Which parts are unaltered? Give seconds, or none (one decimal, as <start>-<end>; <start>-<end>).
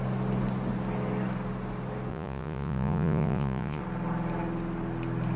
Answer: 0.0-2.1; 3.8-5.4